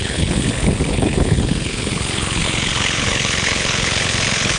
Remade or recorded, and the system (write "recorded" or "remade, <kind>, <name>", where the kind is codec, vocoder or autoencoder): remade, codec, HILCodec